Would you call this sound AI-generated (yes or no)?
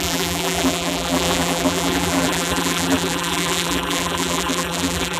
yes